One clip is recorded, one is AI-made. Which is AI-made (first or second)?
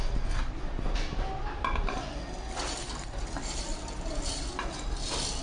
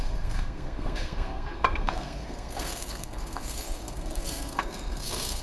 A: second